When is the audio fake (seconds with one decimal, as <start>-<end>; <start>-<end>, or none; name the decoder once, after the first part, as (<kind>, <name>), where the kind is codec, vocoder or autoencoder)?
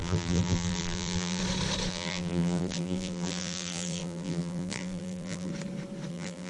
0.0-1.4 (vocoder, BigVGAN v2); 1.9-5.5; 6.1-6.5